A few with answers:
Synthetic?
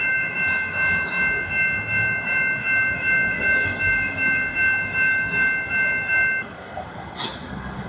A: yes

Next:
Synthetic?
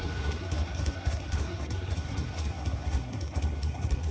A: yes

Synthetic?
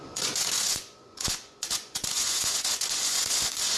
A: yes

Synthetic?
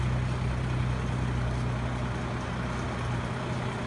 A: no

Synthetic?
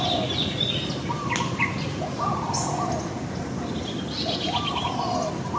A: no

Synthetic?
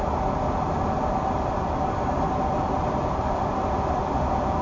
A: no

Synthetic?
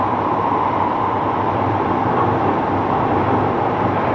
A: no